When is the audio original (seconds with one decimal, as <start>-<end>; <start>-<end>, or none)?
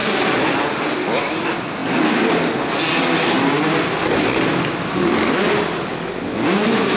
0.0-7.0